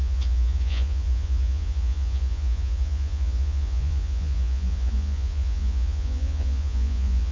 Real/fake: fake